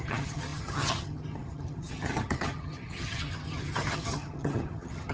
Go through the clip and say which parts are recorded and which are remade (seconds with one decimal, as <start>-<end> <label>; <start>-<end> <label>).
0.0-5.1 remade